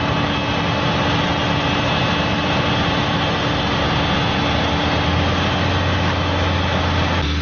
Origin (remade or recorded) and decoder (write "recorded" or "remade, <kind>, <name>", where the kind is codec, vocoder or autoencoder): recorded